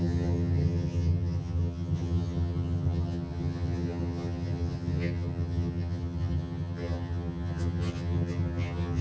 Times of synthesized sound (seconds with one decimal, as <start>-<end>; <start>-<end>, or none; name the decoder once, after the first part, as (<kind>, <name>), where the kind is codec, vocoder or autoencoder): 0.0-9.0 (vocoder, HiFi-GAN)